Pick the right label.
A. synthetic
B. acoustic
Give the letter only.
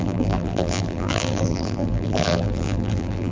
A